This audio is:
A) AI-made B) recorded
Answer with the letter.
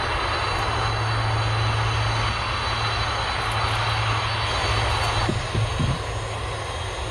B